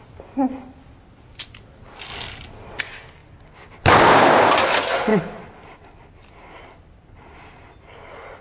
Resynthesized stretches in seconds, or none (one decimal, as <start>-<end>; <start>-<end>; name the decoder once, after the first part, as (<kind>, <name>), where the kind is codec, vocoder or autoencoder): none